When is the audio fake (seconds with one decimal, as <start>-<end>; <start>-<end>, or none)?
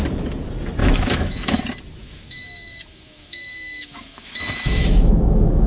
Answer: 0.8-1.6; 2.0-5.7